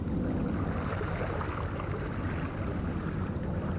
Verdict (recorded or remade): recorded